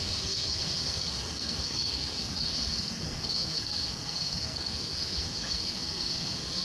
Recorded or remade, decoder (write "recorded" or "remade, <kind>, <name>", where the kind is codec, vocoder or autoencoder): remade, codec, SNAC